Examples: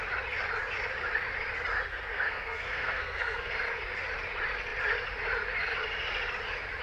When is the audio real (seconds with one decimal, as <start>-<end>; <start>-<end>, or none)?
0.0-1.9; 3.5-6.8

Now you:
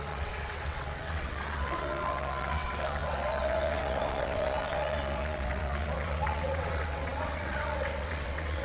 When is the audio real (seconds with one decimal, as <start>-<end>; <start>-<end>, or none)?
none

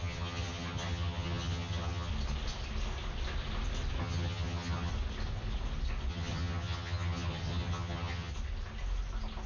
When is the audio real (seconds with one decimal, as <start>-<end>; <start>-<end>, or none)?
2.1-4.0; 4.9-6.1; 8.3-9.5

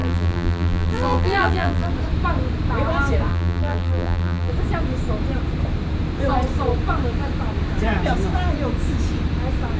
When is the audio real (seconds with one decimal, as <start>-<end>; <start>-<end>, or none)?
1.9-3.3; 4.5-9.8